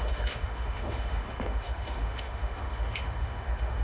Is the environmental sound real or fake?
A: fake